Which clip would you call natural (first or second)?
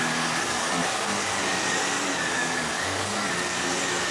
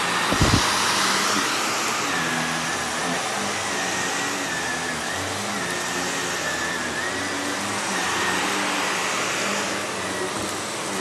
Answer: second